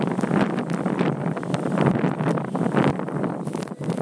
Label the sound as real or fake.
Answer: fake